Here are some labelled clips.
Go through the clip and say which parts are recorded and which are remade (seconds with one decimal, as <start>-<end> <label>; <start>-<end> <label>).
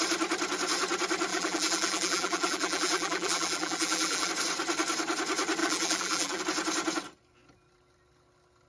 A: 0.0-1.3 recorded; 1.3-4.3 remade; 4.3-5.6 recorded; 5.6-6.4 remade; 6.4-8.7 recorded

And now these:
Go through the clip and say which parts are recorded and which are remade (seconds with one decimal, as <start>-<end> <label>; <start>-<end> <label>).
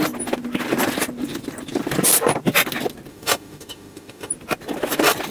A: 0.0-3.1 recorded; 3.1-4.3 remade; 4.3-5.3 recorded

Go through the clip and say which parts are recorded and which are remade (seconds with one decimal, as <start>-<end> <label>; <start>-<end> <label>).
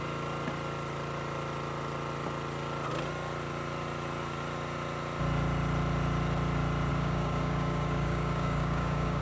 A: 0.0-6.9 recorded; 6.9-9.2 remade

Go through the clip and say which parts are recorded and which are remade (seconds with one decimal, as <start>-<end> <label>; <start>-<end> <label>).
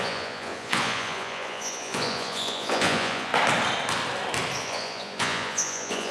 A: 0.0-3.3 remade; 3.3-4.6 recorded; 4.6-6.1 remade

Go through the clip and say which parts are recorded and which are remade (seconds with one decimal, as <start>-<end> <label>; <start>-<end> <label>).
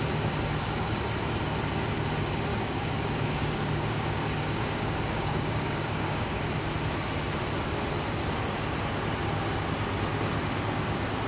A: 0.0-2.5 recorded; 2.5-6.4 remade; 6.4-11.3 recorded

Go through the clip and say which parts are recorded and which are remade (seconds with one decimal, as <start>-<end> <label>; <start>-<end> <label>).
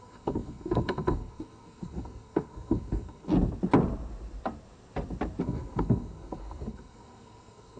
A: 0.0-3.3 remade; 3.3-5.4 recorded; 5.4-7.8 remade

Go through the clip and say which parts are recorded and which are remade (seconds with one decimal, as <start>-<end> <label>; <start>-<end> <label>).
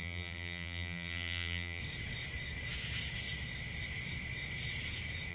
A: 0.0-1.8 remade; 1.8-5.3 recorded